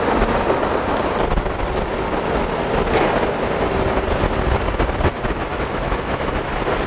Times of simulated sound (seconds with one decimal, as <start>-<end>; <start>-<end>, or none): 5.5-6.3

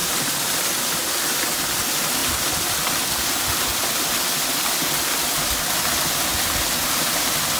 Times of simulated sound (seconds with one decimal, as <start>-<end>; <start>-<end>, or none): none